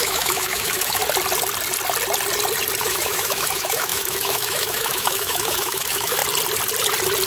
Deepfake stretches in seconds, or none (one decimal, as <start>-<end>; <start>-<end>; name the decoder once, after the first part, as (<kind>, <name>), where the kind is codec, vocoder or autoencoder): 0.0-1.0 (autoencoder, DAC-VAE); 2.8-6.2